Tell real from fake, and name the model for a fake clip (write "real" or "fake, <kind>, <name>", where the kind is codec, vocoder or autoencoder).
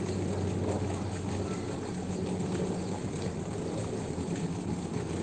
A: real